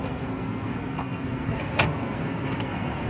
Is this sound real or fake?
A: fake